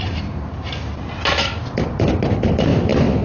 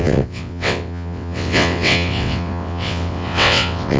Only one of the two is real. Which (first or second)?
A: first